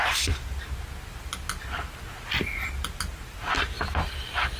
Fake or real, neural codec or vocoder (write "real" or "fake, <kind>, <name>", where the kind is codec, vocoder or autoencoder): real